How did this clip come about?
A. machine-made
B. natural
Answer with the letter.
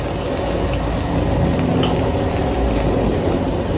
B